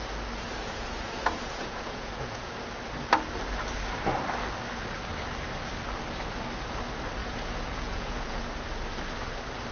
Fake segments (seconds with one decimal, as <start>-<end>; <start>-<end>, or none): 0.6-2.6; 7.2-8.5